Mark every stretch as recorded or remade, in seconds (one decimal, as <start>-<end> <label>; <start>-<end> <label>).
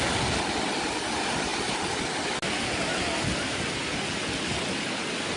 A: 0.0-5.4 recorded